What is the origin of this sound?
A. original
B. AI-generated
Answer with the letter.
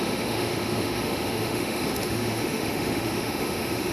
B